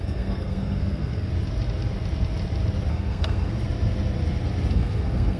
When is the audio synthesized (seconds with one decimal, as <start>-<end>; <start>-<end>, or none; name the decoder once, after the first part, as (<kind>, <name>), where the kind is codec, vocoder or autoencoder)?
0.0-1.3 (codec, SNAC); 2.9-3.6; 4.7-5.4